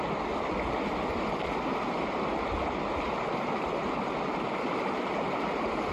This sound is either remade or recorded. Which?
recorded